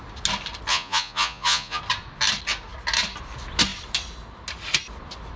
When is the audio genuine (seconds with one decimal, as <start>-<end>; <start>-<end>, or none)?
0.0-0.7; 1.8-5.4